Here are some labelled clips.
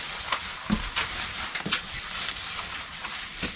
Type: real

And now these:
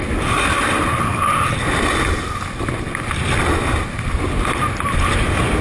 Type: real